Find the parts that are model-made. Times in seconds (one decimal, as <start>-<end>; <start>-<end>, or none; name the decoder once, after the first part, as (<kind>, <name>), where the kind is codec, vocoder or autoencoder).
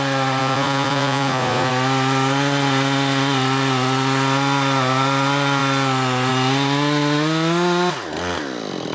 0.4-1.7 (vocoder, Vocos)